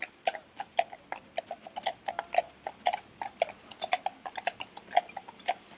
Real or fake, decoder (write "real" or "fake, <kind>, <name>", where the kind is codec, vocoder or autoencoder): real